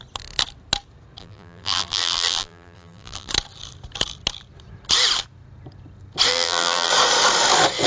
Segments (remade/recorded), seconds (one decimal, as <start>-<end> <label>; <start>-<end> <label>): 0.0-1.2 recorded; 1.2-3.3 remade; 3.3-6.3 recorded; 6.3-6.9 remade; 6.9-7.9 recorded